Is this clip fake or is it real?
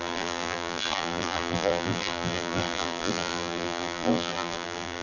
fake